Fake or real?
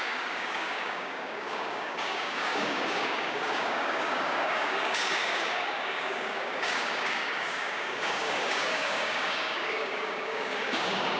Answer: fake